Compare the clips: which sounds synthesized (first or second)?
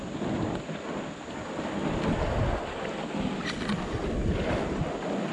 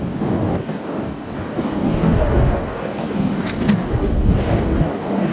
second